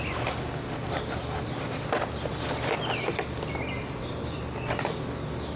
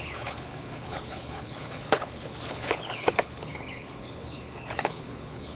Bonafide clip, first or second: first